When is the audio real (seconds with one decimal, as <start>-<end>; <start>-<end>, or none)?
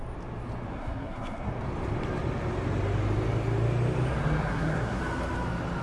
0.0-0.7; 1.5-4.4; 5.0-5.8